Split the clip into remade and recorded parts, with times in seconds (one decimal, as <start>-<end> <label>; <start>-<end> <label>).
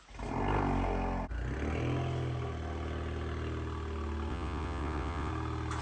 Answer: 0.0-4.3 recorded; 4.3-5.3 remade; 5.3-5.8 recorded